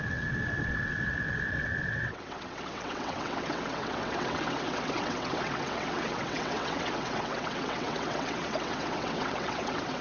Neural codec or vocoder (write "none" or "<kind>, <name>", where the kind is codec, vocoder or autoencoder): vocoder, WaveNeXt